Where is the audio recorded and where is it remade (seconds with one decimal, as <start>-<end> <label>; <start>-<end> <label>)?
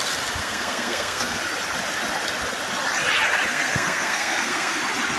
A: 0.0-0.4 recorded; 0.4-1.4 remade; 1.4-3.5 recorded; 3.5-4.8 remade; 4.8-5.2 recorded